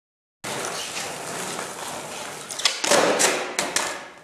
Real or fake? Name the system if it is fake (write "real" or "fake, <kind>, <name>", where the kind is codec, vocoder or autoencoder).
real